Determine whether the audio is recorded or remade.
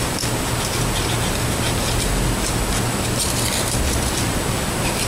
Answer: recorded